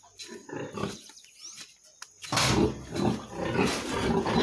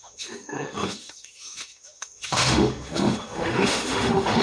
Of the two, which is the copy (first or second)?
second